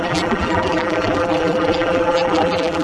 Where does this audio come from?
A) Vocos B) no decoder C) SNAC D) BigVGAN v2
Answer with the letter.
D